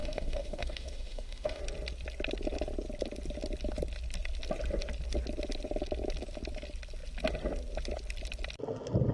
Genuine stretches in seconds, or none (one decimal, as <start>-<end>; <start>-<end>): 1.6-9.1